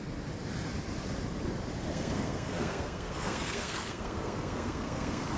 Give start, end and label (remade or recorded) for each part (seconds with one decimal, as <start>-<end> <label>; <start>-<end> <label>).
0.0-1.9 recorded; 1.9-5.4 remade